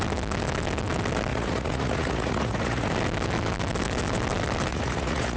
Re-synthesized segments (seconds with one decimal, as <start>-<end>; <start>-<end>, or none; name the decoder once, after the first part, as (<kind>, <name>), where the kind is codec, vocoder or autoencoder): 1.3-2.9 (vocoder, Vocos); 4.7-5.4